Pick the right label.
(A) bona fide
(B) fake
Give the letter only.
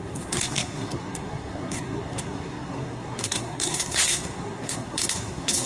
B